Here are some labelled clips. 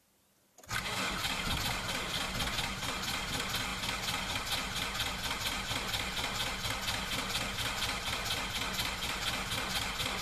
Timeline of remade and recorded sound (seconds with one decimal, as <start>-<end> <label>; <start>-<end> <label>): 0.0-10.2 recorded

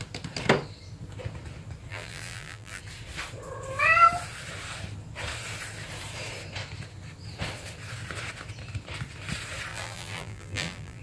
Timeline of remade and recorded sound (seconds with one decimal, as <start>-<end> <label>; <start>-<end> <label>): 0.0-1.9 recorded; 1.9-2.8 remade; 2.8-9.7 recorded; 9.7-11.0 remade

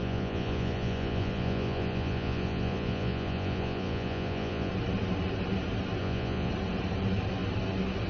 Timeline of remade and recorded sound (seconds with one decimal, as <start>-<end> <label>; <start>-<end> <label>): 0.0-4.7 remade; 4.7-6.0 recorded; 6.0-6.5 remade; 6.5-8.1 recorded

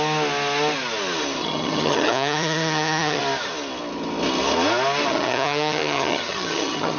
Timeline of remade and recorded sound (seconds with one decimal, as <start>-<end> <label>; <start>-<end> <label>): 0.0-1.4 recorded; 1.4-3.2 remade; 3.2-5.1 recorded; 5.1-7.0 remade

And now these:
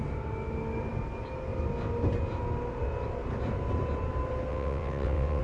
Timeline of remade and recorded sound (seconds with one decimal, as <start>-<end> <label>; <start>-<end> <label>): 0.0-4.5 recorded; 4.5-5.4 remade